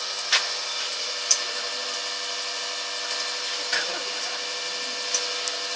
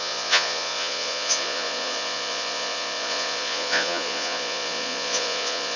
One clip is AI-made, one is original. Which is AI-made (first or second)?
second